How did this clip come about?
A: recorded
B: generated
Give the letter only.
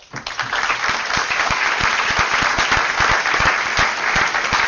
A